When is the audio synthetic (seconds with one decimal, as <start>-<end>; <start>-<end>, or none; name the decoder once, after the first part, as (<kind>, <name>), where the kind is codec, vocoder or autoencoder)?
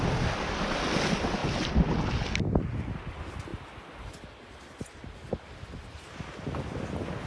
none